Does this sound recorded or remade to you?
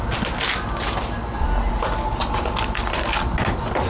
recorded